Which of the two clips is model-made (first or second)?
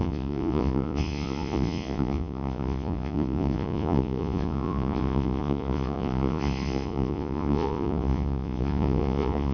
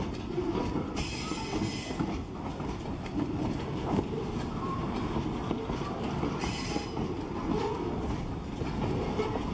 first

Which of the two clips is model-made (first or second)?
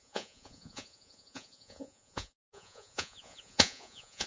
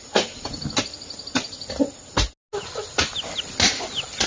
first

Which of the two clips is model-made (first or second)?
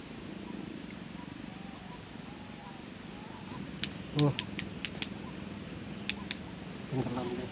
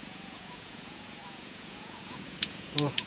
second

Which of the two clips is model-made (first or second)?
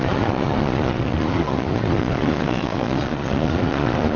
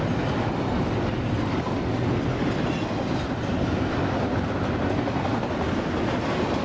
first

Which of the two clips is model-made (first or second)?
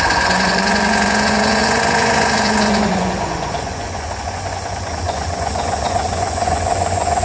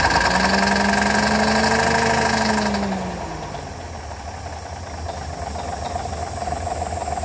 first